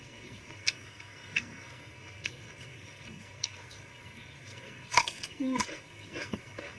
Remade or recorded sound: remade